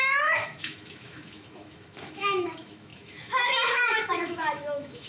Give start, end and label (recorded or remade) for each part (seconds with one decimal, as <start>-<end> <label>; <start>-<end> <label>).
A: 0.0-5.1 remade